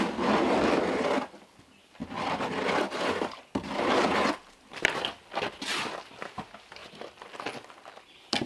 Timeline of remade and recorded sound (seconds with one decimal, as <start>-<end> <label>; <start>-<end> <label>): 0.0-8.5 recorded